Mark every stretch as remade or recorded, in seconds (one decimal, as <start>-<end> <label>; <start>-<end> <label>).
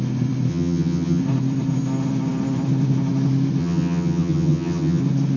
0.0-0.5 recorded; 0.5-1.2 remade; 1.2-3.6 recorded; 3.6-5.0 remade; 5.0-5.4 recorded